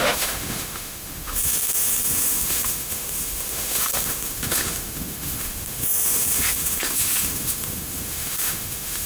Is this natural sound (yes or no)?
no